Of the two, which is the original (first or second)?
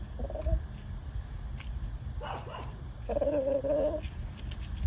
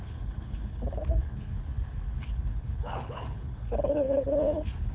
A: first